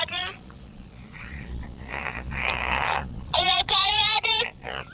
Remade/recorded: remade